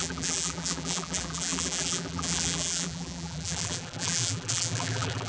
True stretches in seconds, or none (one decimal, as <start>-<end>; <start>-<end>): none